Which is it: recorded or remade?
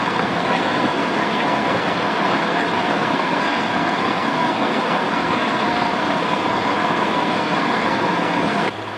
remade